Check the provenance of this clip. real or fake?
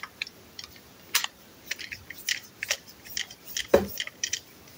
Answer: fake